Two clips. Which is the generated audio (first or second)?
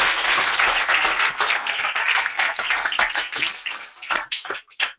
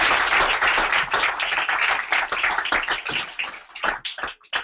first